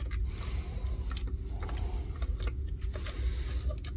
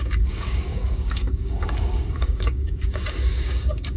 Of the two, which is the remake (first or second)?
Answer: second